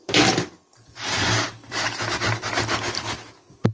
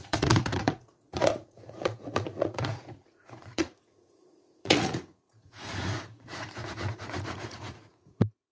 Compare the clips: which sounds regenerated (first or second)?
second